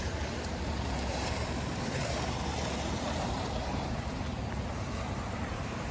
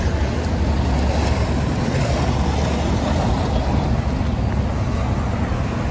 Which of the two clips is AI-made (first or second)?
first